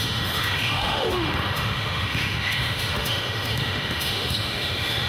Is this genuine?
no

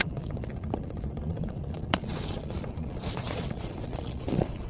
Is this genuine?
no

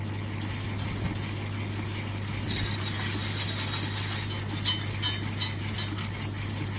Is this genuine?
yes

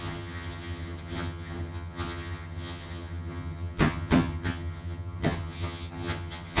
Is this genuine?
no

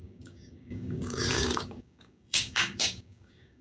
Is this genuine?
no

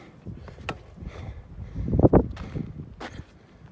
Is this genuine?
yes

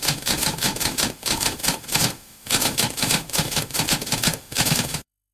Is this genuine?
no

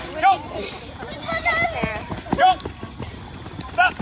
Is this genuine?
yes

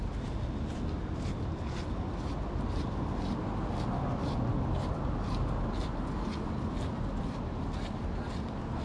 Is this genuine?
yes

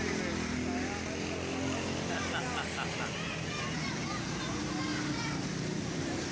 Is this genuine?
yes